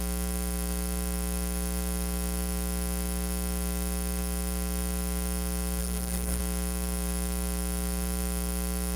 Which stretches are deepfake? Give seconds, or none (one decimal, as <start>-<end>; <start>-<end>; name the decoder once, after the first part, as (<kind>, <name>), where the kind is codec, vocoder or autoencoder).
5.8-6.4 (codec, SNAC)